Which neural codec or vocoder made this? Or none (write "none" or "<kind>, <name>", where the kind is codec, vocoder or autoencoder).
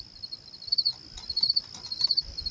vocoder, BigVGAN v2